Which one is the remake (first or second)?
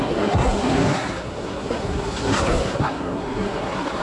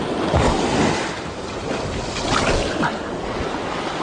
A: first